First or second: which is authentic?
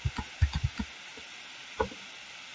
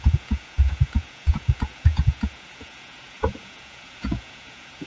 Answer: first